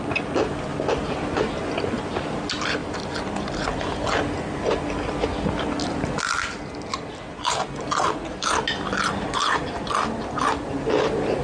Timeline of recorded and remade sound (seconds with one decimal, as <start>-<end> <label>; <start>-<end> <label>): 0.0-11.4 recorded